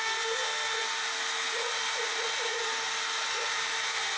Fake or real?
real